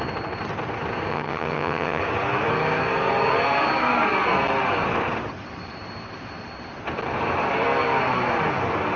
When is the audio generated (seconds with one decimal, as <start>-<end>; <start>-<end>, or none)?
1.1-2.0

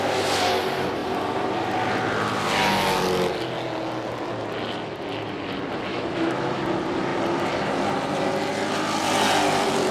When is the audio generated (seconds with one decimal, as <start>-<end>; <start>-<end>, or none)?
5.9-6.6

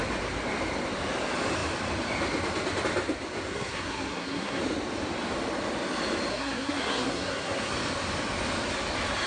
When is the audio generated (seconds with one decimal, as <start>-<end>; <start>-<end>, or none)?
3.5-4.6; 6.3-7.7

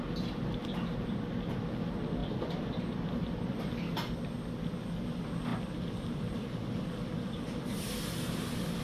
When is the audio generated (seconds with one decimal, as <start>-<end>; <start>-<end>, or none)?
2.2-3.6; 5.5-7.4